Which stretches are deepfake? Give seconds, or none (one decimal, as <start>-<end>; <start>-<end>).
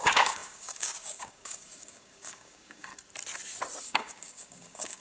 0.0-2.9; 3.8-5.0